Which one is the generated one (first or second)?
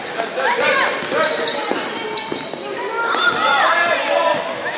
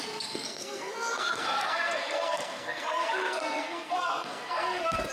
second